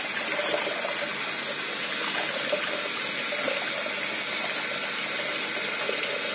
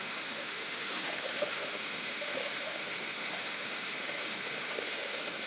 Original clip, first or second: first